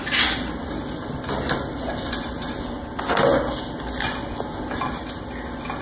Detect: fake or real real